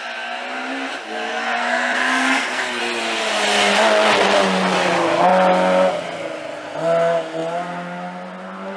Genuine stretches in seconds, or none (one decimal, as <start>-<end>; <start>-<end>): 0.0-1.3; 2.8-8.8